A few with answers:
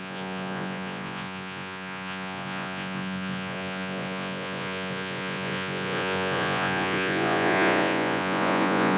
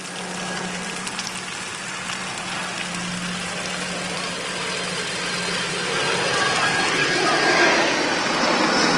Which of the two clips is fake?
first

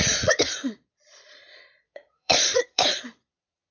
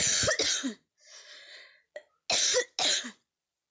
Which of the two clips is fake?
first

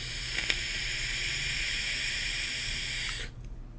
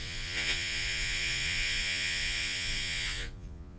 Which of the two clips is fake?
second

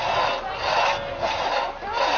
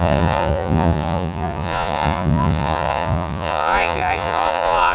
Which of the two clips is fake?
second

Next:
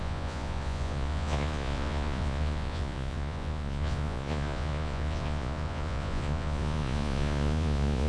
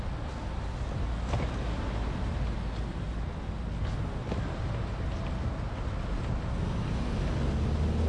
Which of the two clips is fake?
first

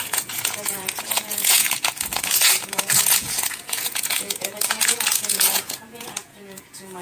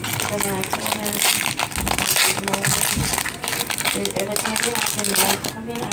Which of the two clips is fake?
first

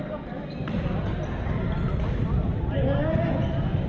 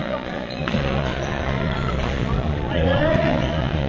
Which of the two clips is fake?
second